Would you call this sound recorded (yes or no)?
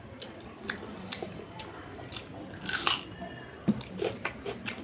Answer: yes